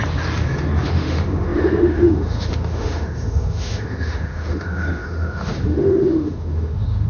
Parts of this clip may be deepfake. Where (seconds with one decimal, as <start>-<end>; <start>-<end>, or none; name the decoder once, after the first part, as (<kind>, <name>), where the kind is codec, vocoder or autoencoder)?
0.8-7.1 (autoencoder, DAC-VAE)